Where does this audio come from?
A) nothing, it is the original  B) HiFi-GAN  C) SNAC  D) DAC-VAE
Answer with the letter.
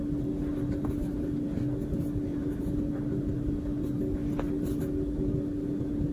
A